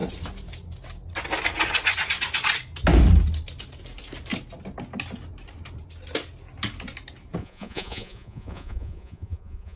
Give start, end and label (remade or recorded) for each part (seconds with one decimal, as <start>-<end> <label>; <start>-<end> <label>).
0.0-7.4 recorded; 7.4-9.8 remade